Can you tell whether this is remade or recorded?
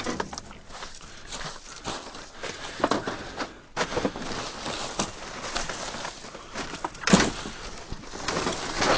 recorded